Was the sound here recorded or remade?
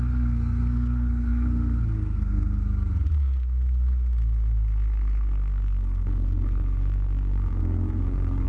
remade